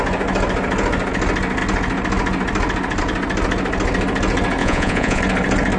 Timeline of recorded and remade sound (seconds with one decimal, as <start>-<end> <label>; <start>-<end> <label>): 0.0-4.6 recorded; 4.6-5.2 remade; 5.2-5.8 recorded

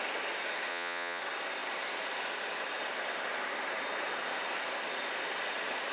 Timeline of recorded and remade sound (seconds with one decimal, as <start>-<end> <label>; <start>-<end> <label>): 0.0-0.7 recorded; 0.7-1.2 remade; 1.2-5.9 recorded

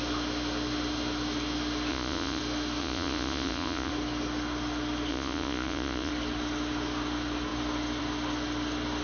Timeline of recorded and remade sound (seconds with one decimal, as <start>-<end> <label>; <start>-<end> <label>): 0.0-1.9 recorded; 1.9-2.4 remade; 2.4-2.8 recorded; 2.8-3.9 remade; 3.9-5.1 recorded; 5.1-6.1 remade; 6.1-9.0 recorded

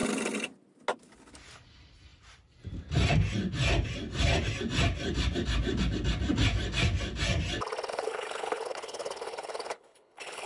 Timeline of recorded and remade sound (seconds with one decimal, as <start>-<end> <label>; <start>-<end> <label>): 0.0-7.9 recorded; 7.9-10.5 remade

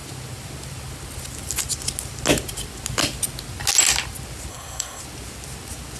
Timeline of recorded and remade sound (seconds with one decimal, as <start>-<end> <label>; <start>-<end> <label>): 0.0-4.5 recorded; 4.5-5.0 remade; 5.0-6.0 recorded

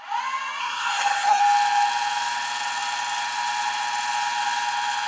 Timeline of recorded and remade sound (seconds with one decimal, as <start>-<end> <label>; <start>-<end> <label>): 0.0-0.6 recorded; 0.6-1.4 remade; 1.4-5.1 recorded

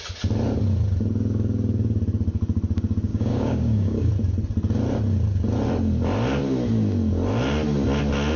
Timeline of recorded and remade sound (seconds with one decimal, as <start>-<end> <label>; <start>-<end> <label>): 0.0-3.1 recorded; 3.1-4.1 remade; 4.1-8.4 recorded

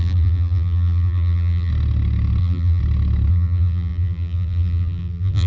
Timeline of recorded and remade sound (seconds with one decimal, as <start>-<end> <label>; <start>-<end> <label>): 0.0-1.7 remade; 1.7-2.4 recorded; 2.4-2.8 remade; 2.8-3.3 recorded; 3.3-5.5 remade